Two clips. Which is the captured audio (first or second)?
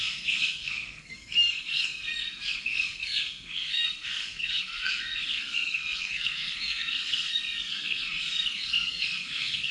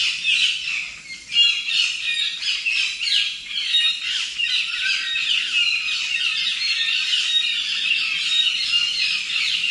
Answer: second